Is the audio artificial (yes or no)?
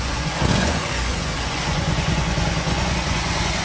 yes